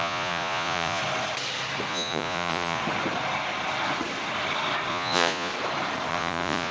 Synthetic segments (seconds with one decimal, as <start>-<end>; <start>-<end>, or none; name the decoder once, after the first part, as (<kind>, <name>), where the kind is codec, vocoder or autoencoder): 0.0-1.0 (vocoder, Vocos); 1.9-2.8; 4.9-5.5; 6.1-6.7